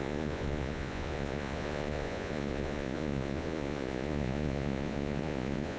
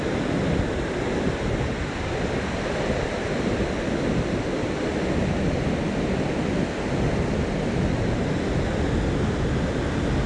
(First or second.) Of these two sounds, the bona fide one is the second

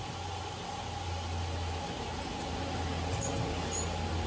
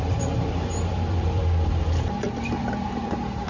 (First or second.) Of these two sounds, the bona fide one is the first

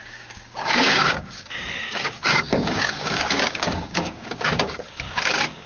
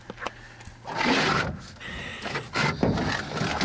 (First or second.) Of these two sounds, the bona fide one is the second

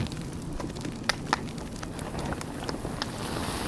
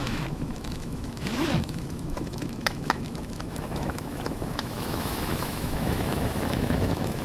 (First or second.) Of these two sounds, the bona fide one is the first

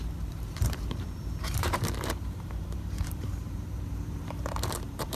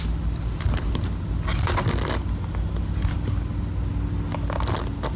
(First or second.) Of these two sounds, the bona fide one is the second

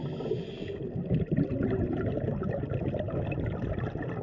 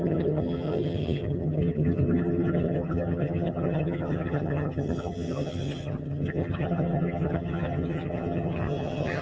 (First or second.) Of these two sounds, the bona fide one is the first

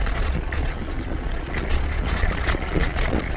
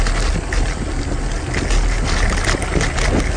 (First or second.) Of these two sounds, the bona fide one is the second